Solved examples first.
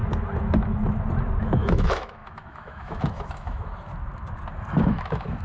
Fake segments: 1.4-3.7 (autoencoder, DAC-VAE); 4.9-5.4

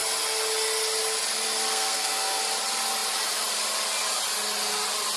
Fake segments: 1.7-2.4 (codec, SNAC)

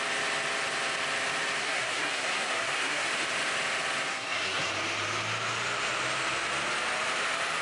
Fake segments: 1.6-3.1 (codec, SNAC); 4.1-4.7

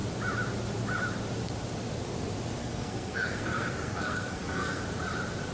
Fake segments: 2.6-4.8 (codec, SNAC)

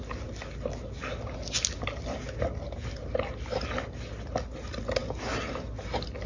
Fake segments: none